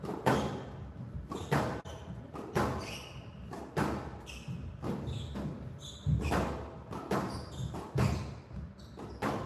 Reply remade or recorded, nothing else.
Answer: recorded